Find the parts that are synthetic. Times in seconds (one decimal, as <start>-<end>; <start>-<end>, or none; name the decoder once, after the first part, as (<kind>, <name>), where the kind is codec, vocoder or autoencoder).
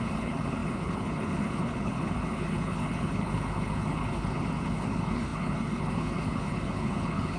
0.0-7.4 (codec, HILCodec)